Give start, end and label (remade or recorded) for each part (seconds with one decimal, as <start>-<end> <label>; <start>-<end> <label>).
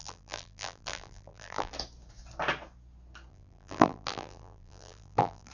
0.0-1.7 remade; 1.7-3.3 recorded; 3.3-5.5 remade